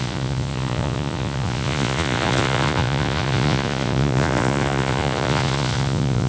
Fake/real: fake